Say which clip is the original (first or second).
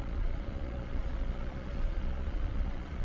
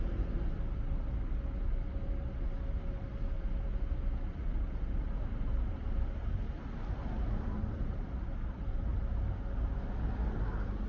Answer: second